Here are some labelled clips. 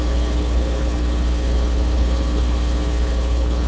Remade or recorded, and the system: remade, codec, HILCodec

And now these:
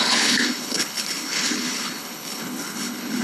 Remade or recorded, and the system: remade, codec, HILCodec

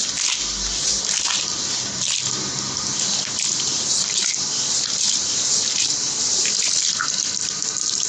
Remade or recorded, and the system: recorded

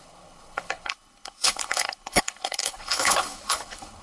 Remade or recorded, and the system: remade, codec, HILCodec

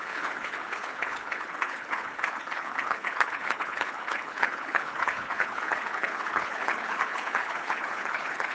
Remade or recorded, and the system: remade, codec, HILCodec